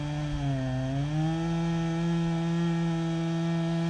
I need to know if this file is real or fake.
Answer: real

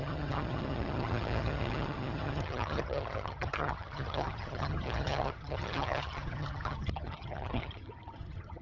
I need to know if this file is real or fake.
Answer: fake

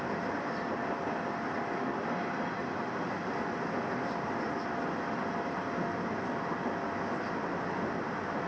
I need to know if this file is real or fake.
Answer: real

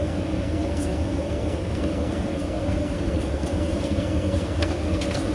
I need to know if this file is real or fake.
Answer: fake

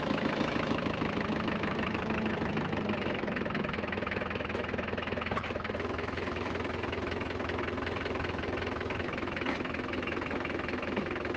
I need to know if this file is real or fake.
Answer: fake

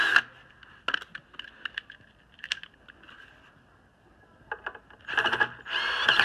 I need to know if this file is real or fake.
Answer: real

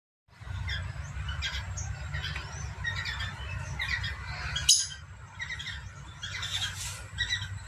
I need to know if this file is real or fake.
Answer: real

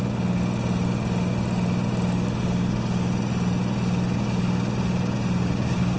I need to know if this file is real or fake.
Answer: real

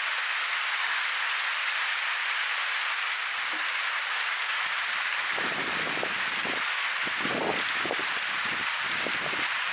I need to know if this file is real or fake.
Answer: real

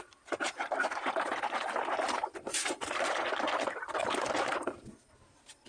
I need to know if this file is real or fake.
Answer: real